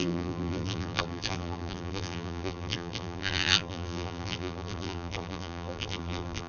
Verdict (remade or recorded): remade